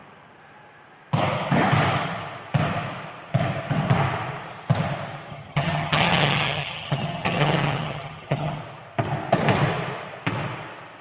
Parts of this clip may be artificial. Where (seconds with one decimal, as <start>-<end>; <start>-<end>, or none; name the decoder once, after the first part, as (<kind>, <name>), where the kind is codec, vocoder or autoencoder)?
5.3-8.6 (vocoder, HiFi-GAN)